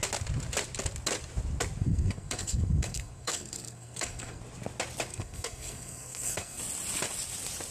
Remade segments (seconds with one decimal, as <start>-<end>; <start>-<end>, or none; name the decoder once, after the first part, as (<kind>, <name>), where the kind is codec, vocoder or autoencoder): 1.8-4.4 (codec, SNAC); 5.1-6.6